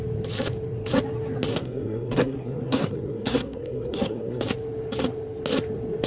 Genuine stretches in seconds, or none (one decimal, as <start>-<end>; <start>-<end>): 0.0-1.5; 4.4-6.1